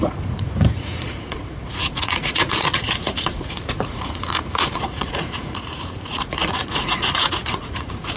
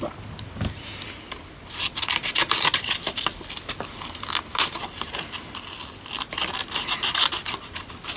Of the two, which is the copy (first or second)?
first